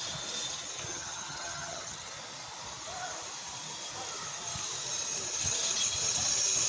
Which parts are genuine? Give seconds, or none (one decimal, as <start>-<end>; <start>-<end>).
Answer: 0.0-0.9; 2.1-6.7